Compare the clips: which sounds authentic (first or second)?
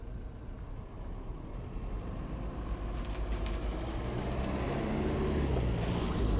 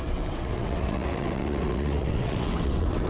first